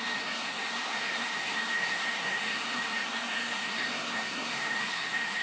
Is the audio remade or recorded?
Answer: remade